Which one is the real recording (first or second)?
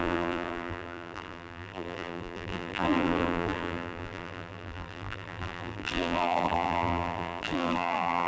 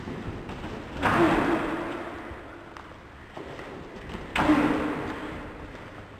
second